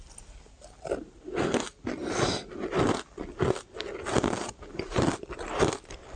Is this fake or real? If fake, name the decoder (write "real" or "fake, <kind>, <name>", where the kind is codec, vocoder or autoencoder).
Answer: real